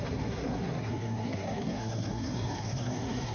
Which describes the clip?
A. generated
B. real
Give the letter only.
A